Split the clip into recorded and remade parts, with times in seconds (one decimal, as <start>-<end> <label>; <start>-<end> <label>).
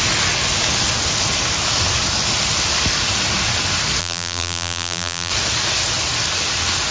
0.0-4.0 recorded; 4.0-5.3 remade; 5.3-6.9 recorded